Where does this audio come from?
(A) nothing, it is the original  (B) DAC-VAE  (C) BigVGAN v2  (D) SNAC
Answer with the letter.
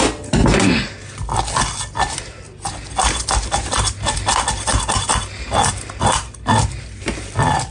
A